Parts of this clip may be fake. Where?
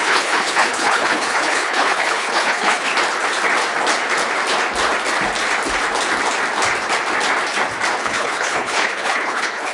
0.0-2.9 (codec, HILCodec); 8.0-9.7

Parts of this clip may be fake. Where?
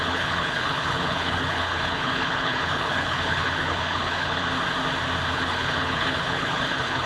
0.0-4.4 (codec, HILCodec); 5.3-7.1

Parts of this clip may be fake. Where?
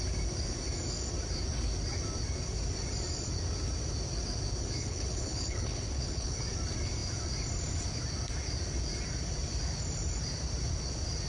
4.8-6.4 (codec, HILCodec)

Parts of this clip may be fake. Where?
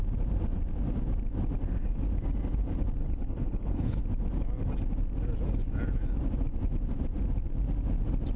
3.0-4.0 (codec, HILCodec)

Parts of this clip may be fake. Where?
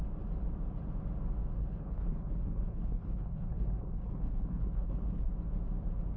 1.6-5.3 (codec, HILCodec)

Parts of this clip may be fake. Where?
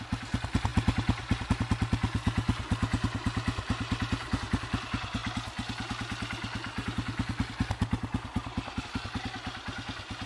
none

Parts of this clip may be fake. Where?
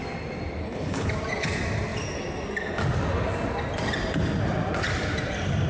0.6-1.1 (codec, HILCodec)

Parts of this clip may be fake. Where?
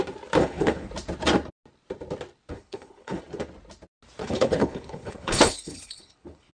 0.4-0.9 (codec, HILCodec); 2.5-3.2; 4.2-6.5